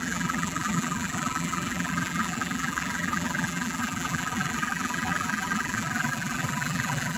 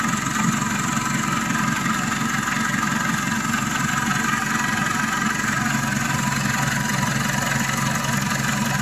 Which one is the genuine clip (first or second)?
second